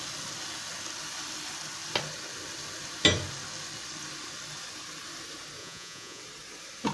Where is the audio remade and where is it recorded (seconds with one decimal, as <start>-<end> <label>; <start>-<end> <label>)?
0.0-5.6 recorded; 5.6-6.2 remade; 6.2-6.9 recorded